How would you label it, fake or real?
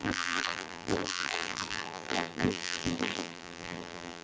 fake